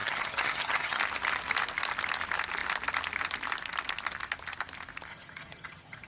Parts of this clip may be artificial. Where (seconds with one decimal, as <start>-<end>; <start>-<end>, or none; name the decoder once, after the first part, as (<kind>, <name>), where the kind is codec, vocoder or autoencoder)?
0.0-1.0 (vocoder, HiFi-GAN); 5.1-6.1

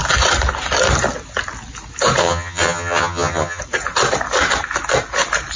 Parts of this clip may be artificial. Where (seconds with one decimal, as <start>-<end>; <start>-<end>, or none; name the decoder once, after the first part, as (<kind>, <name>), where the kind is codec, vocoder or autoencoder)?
2.2-3.6 (vocoder, HiFi-GAN)

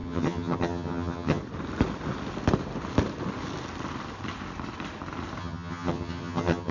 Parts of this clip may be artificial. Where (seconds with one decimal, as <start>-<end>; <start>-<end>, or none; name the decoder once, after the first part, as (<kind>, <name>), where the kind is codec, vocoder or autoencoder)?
0.0-1.4 (vocoder, HiFi-GAN); 5.4-6.7

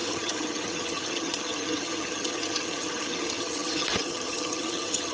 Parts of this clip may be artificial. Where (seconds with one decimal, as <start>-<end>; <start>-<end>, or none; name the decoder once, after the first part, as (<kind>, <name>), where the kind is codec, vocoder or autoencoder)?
0.0-5.1 (vocoder, HiFi-GAN)

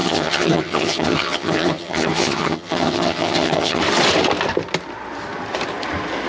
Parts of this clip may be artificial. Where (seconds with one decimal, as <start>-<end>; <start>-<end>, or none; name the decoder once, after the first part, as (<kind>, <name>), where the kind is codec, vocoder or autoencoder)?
0.0-3.8 (vocoder, HiFi-GAN)